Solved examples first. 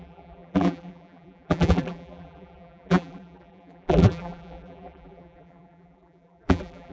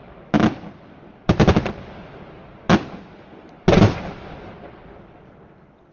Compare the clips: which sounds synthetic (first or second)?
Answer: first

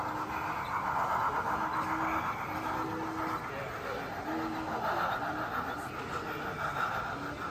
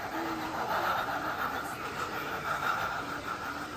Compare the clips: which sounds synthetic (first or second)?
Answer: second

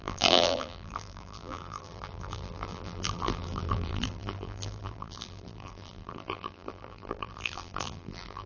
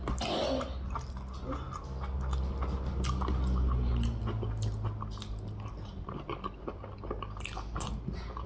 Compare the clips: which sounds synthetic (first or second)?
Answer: first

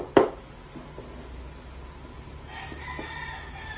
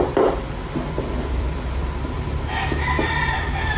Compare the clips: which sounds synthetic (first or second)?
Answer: second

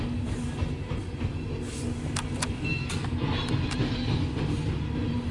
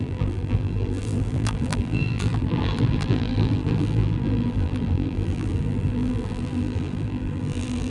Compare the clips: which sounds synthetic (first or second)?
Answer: second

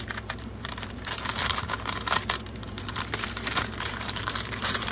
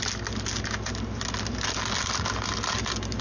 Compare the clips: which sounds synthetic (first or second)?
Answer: first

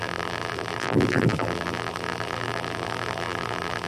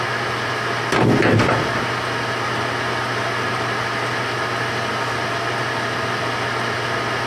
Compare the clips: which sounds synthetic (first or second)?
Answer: first